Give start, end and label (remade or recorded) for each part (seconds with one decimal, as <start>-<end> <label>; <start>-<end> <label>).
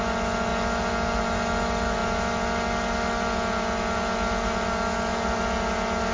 0.0-6.1 recorded